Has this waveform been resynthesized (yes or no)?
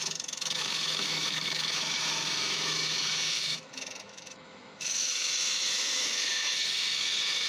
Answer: yes